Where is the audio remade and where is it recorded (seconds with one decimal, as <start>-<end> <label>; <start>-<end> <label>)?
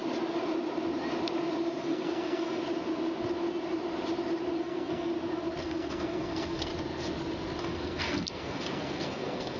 0.0-1.8 recorded; 1.8-2.6 remade; 2.6-4.6 recorded; 4.6-5.1 remade; 5.1-5.6 recorded; 5.6-6.7 remade; 6.7-7.6 recorded; 7.6-9.6 remade